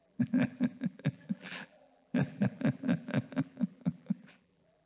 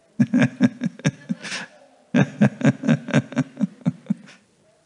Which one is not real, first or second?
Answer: first